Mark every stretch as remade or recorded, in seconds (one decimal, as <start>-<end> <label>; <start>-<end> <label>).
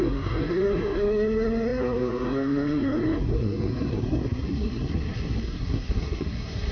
0.0-6.7 remade